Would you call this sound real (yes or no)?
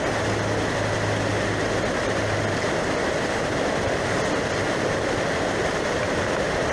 yes